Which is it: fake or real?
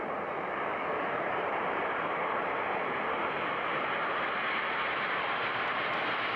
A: fake